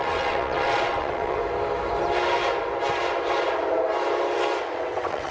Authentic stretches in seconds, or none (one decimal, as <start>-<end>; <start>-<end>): 1.4-4.6